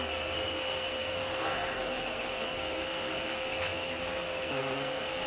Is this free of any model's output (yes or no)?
no